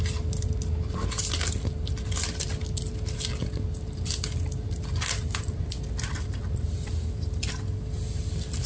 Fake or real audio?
real